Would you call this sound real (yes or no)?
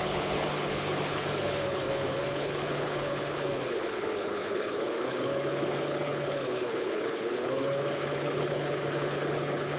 no